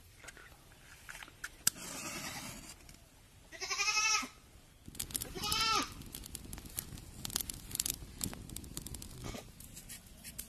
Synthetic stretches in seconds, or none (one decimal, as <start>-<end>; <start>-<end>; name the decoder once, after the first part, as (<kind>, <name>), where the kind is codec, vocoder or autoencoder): none